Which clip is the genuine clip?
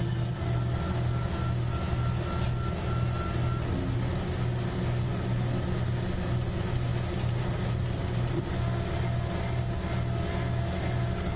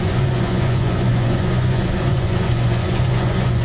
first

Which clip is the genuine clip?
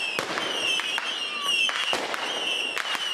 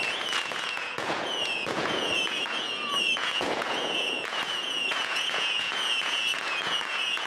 first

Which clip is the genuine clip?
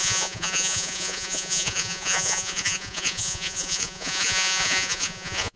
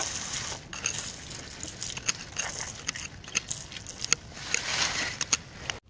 second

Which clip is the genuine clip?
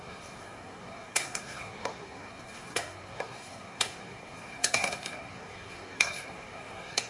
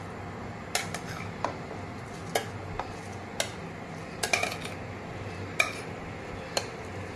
second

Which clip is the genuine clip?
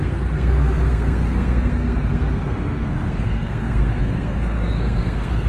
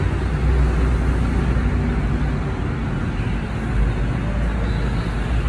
second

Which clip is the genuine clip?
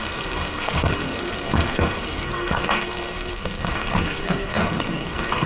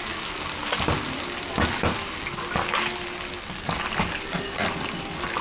second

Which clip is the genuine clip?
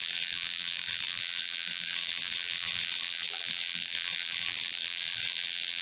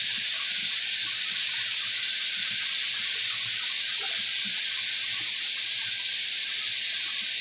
second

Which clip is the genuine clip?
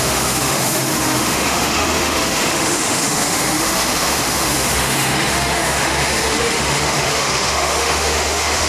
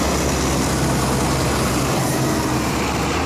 second